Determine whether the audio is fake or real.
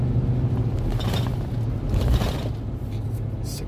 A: real